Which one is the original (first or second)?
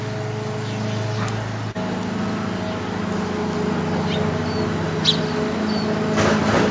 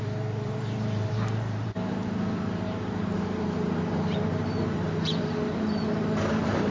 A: first